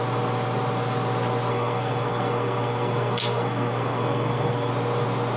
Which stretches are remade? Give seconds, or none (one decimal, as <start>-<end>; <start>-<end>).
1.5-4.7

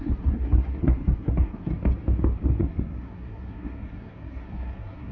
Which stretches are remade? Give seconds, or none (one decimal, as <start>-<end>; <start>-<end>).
0.0-1.7; 2.6-5.1

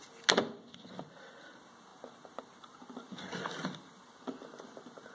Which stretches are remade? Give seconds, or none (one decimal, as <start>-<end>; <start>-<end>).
none